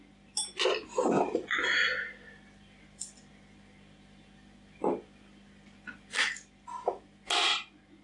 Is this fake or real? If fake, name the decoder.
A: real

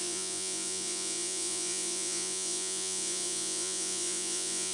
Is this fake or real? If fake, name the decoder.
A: fake, vocoder, Vocos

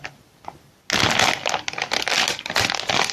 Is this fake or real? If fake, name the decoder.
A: real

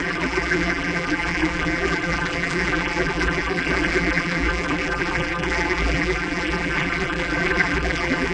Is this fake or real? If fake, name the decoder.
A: fake, vocoder, BigVGAN v2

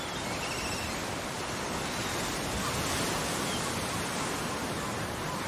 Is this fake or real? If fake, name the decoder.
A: real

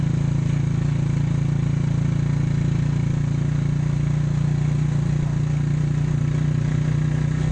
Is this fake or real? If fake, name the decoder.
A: real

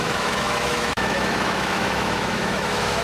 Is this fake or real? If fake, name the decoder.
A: fake, autoencoder, DAC-VAE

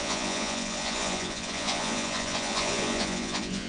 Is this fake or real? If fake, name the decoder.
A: fake, vocoder, Vocos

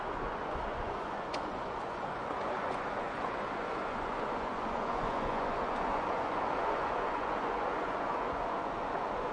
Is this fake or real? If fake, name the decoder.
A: fake, vocoder, Vocos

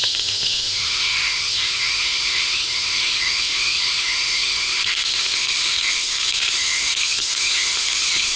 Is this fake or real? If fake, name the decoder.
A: fake, autoencoder, DAC-VAE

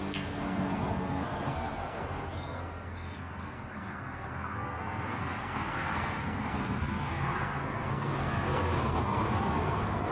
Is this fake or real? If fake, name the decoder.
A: fake, codec, SNAC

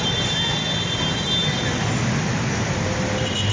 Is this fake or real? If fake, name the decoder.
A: real